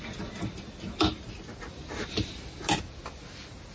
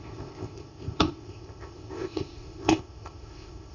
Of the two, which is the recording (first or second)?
first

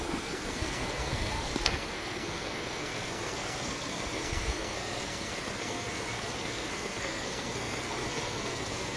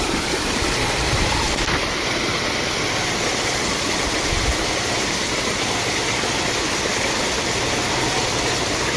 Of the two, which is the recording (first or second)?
second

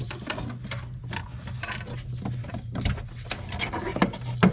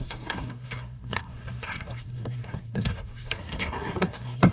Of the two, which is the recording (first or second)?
first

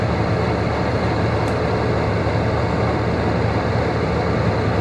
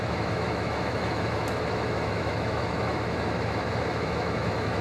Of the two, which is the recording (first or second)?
first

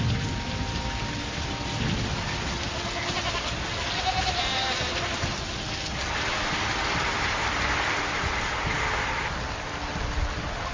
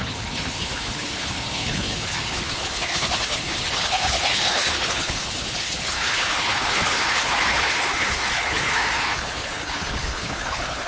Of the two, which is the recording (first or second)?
first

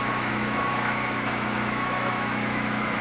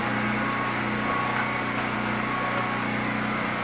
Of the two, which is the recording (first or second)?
second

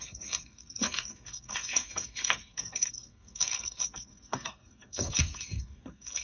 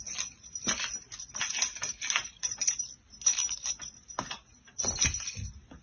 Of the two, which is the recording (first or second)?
second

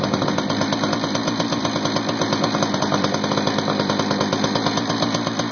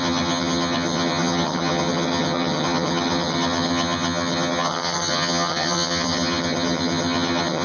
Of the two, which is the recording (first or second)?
first